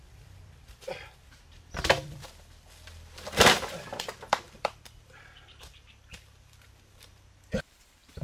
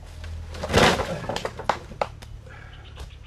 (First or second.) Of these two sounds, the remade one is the first